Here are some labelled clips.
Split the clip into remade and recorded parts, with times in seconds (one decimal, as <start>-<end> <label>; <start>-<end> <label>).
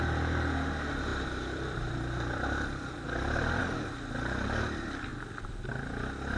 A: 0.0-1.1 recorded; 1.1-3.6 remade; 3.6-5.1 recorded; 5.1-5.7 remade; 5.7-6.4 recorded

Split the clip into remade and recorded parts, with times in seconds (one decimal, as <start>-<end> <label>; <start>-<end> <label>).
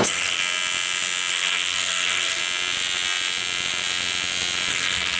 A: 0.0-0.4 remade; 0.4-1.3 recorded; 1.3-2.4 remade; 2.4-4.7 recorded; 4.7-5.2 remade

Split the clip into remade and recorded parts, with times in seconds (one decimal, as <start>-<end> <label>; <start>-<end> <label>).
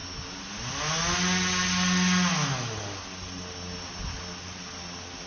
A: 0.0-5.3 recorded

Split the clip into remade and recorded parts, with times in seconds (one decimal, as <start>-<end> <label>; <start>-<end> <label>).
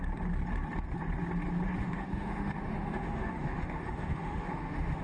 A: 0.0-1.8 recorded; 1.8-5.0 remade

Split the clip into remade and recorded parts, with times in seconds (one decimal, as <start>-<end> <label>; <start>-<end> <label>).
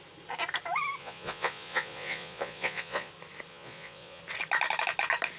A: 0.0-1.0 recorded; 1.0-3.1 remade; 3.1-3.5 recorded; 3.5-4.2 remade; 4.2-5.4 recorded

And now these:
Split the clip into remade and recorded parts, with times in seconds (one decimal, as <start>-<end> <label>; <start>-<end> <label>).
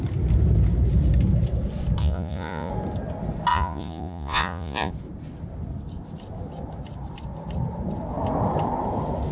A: 0.0-2.0 recorded; 2.0-2.7 remade; 2.7-3.5 recorded; 3.5-4.9 remade; 4.9-9.3 recorded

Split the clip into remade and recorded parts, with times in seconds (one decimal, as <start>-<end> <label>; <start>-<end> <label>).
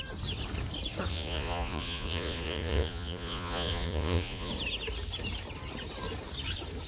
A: 0.0-1.1 recorded; 1.1-4.5 remade; 4.5-6.9 recorded